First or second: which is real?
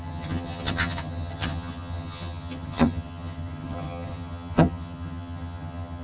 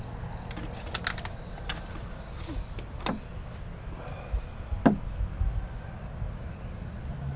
second